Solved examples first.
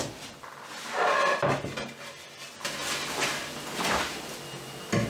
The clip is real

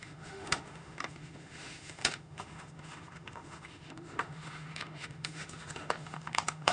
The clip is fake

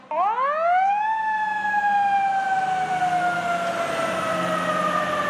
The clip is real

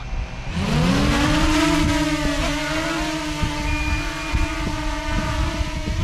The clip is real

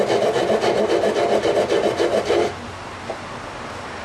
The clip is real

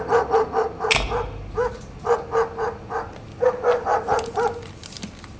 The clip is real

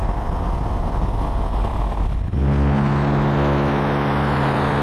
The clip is real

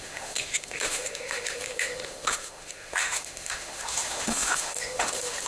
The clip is fake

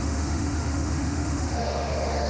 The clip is fake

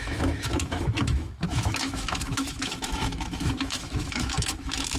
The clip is fake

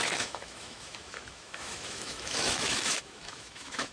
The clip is fake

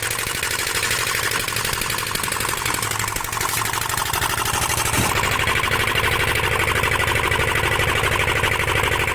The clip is real